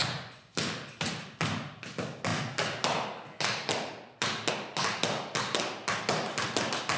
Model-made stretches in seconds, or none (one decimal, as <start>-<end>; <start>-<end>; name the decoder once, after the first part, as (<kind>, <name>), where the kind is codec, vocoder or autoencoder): 0.0-0.5 (vocoder, Vocos)